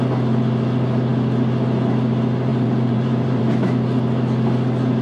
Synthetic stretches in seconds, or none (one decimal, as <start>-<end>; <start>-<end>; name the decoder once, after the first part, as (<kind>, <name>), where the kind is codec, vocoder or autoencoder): 2.5-3.4 (vocoder, BigVGAN v2)